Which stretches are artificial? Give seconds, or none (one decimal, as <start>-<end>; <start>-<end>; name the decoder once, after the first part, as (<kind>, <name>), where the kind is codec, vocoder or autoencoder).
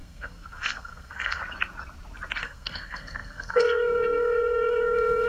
0.0-1.4 (codec, SNAC); 2.4-5.3